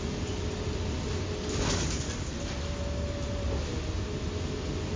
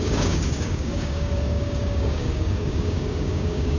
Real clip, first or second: first